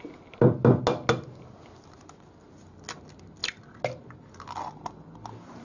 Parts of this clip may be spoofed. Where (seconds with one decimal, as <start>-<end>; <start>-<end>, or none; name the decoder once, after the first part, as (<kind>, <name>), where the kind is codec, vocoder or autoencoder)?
none